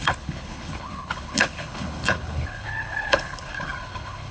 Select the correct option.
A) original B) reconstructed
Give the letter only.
B